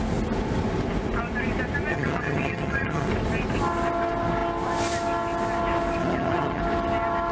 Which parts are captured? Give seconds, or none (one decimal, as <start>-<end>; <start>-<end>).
0.0-1.9; 3.1-6.0; 6.6-7.3